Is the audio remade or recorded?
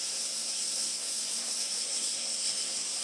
remade